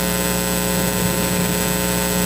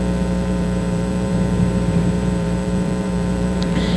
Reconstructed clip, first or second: second